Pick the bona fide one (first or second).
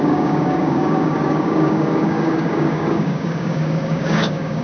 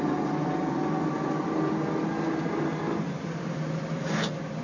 second